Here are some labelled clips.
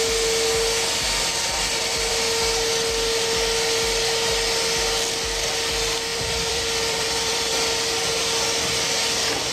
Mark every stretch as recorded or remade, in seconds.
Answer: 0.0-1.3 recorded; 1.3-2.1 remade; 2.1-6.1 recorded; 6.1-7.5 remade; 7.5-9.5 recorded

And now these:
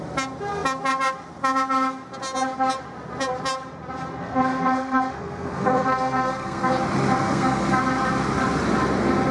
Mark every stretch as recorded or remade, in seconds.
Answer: 0.0-4.2 recorded; 4.2-6.7 remade; 6.7-7.2 recorded; 7.2-7.8 remade; 7.8-9.3 recorded